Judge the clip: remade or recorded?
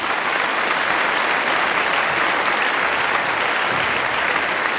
recorded